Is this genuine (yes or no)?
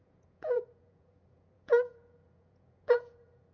no